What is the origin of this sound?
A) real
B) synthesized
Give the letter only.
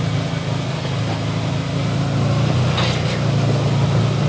A